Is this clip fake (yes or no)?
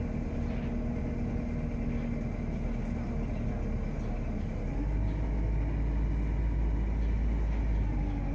no